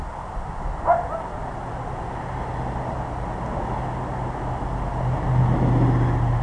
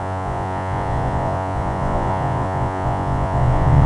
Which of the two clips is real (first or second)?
first